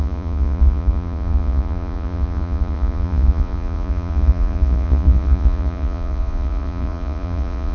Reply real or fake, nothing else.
fake